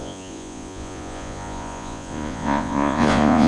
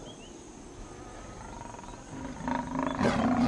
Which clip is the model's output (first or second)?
first